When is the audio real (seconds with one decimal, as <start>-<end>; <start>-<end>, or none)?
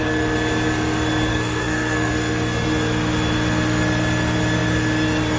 0.0-1.3; 2.1-5.4